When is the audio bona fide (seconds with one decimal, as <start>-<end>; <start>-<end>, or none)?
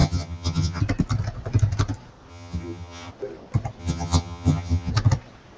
0.8-2.3; 3.1-3.8; 4.9-5.6